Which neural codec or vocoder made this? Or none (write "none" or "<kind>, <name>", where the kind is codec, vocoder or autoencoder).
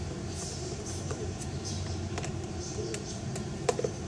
vocoder, BigVGAN v2